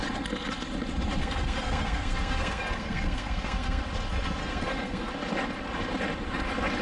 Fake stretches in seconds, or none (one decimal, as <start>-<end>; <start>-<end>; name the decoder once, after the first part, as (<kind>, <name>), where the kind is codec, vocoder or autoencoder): 1.2-3.8 (codec, SNAC); 4.4-5.1